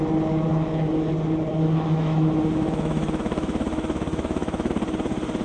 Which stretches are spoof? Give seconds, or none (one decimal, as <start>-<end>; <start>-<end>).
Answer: 0.5-1.1; 1.5-4.7